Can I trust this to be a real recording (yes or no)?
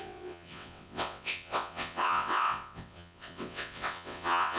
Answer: no